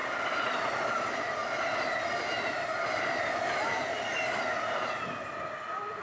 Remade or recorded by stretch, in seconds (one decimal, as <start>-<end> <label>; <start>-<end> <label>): 0.0-6.0 recorded